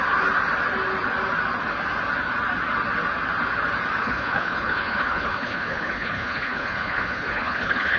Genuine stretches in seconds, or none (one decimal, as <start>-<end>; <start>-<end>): 0.0-4.0